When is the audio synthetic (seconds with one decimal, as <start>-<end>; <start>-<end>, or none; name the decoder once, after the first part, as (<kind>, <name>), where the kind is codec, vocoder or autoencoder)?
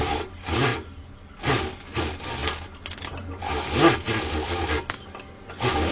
none